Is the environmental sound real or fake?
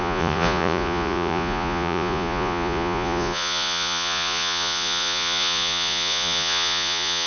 fake